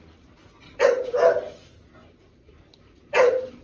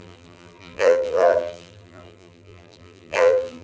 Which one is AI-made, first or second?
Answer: second